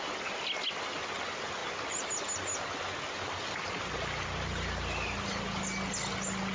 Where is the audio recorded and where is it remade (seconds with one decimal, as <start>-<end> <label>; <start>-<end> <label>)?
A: 0.0-6.5 recorded